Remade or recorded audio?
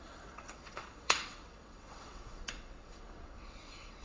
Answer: remade